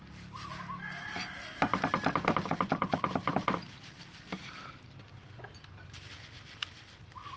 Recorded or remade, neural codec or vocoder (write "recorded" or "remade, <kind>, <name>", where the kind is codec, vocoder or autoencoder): recorded